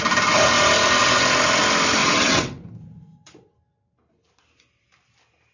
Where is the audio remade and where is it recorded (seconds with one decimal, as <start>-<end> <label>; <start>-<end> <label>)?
0.0-2.0 recorded; 2.0-2.7 remade; 2.7-5.5 recorded